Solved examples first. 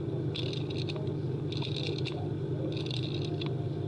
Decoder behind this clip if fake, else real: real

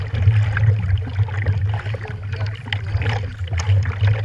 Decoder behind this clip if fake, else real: real